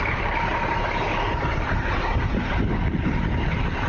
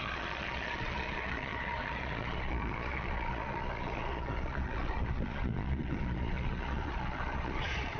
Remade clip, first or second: second